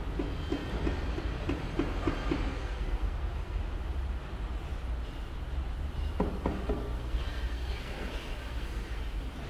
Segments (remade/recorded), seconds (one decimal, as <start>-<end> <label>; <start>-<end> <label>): 0.0-2.5 recorded; 2.5-3.6 remade; 3.6-6.3 recorded; 6.3-9.0 remade; 9.0-9.5 recorded